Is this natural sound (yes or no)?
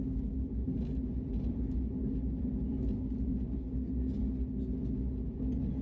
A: yes